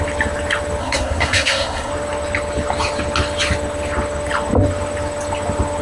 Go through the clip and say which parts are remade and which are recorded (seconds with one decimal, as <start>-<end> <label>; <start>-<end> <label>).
0.0-0.8 recorded; 0.8-1.9 remade; 1.9-5.8 recorded